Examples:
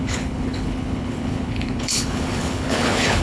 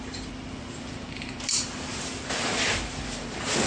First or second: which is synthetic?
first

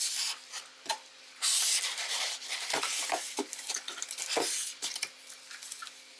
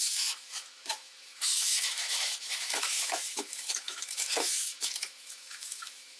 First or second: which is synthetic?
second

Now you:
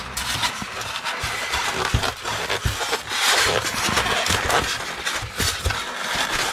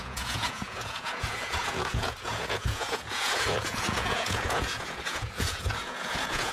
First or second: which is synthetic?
second